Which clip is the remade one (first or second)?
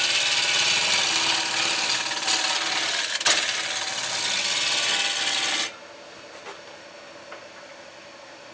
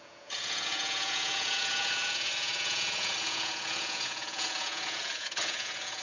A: second